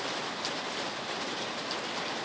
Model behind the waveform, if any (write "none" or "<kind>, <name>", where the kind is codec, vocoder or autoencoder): none